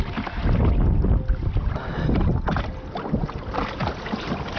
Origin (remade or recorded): recorded